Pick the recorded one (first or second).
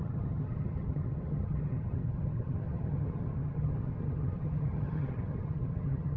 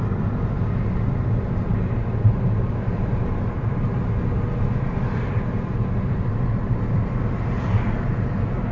second